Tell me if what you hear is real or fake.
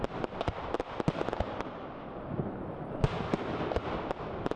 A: real